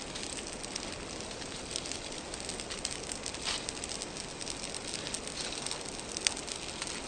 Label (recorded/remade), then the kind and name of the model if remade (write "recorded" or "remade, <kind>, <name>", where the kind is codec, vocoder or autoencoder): recorded